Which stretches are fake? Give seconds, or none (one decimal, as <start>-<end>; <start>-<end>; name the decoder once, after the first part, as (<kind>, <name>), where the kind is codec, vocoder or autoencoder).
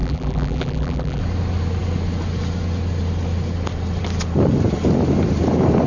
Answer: 0.0-1.2 (vocoder, BigVGAN v2)